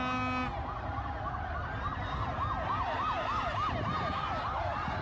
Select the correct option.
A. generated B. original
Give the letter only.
B